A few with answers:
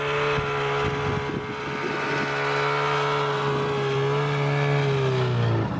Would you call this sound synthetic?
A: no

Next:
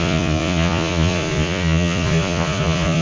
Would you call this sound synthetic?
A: yes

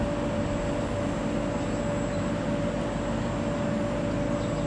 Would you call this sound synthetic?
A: no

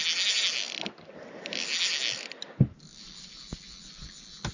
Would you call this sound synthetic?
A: no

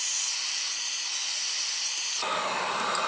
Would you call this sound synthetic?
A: no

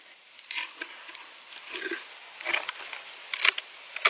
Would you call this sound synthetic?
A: yes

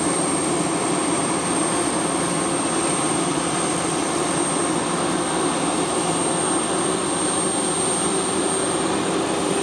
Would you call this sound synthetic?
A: no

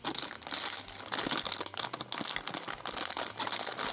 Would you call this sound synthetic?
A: no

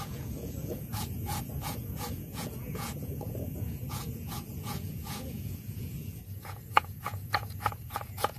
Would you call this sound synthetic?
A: yes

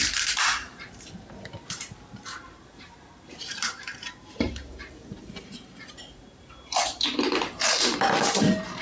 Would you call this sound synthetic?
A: yes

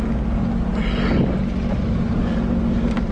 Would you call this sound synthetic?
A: no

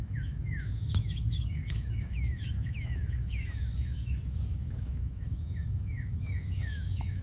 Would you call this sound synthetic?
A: yes